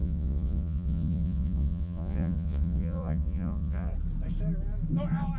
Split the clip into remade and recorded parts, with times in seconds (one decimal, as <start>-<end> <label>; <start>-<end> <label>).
0.0-3.9 remade; 3.9-5.4 recorded